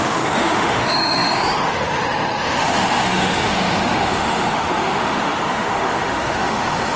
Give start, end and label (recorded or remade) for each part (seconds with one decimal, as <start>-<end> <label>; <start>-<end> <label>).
0.0-7.0 remade